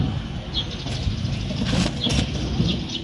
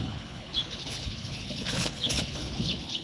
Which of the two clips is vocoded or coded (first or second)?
second